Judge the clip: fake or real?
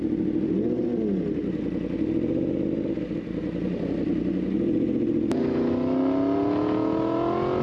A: real